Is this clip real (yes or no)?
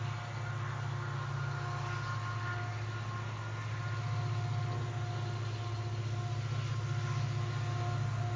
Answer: yes